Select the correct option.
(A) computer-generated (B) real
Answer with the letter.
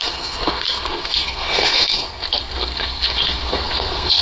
A